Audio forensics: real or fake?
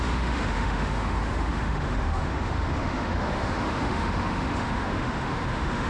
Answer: fake